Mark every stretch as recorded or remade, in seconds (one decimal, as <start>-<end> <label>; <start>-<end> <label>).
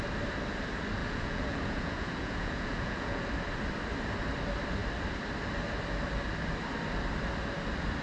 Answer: 0.0-1.0 recorded; 1.0-3.2 remade; 3.2-8.0 recorded